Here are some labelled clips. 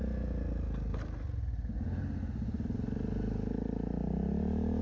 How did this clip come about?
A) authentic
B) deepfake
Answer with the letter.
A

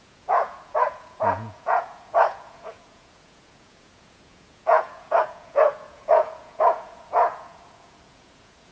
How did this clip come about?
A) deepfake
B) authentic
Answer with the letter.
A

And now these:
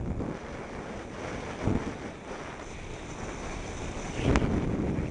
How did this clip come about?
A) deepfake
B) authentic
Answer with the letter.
B